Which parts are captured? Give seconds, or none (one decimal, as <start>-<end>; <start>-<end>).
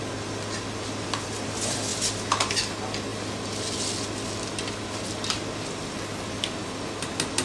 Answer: 0.0-7.4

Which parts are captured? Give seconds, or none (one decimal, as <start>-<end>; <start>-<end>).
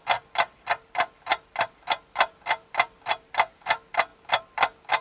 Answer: 1.3-2.4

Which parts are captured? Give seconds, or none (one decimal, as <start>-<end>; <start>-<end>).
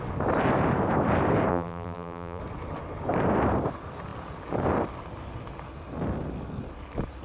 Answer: 0.0-1.5; 2.4-7.2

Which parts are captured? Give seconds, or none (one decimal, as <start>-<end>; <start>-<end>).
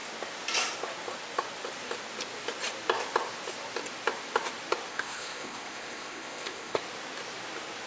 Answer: 0.0-4.9; 6.8-7.9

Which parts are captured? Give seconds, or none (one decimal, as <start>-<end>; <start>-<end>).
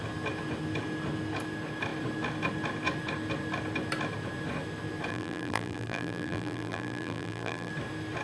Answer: 0.0-5.1; 7.7-8.2